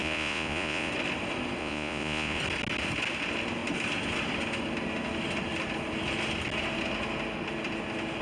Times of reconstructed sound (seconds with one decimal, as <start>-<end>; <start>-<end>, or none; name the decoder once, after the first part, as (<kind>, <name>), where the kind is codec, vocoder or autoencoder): 0.0-0.9 (vocoder, Vocos); 1.6-2.4